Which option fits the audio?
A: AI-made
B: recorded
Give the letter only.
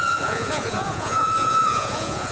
A